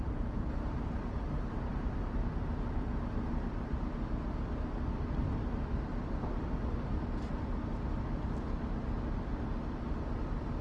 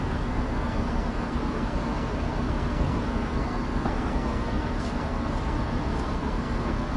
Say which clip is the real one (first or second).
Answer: first